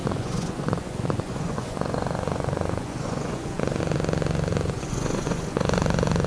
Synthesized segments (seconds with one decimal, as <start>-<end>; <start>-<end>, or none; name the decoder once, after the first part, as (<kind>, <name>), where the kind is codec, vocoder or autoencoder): 0.0-3.8 (vocoder, Vocos); 4.5-6.3